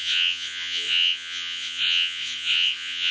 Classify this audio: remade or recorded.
remade